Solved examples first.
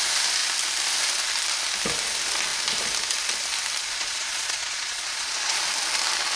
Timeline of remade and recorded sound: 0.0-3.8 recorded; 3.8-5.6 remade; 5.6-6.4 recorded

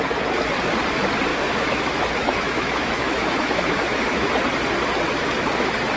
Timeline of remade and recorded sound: 0.0-1.3 recorded; 1.3-4.3 remade; 4.3-6.0 recorded